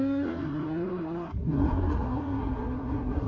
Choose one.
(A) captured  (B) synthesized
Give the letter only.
B